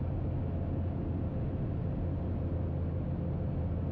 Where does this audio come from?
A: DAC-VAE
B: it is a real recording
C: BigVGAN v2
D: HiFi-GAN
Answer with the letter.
B